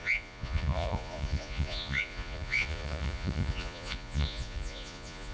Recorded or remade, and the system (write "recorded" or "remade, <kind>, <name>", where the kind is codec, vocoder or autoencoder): remade, vocoder, Vocos